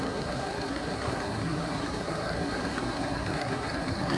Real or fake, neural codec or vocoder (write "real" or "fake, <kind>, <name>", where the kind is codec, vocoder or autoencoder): fake, codec, SNAC